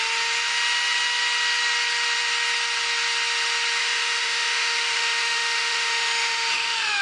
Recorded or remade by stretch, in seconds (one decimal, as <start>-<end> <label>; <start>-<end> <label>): 0.0-3.8 recorded; 3.8-7.0 remade